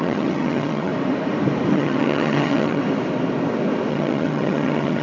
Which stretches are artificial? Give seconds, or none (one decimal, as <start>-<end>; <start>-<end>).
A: 0.0-0.9; 1.7-2.8; 3.9-5.0